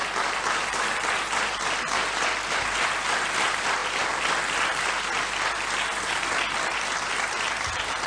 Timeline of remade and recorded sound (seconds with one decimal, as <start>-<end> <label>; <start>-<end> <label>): 0.0-8.1 recorded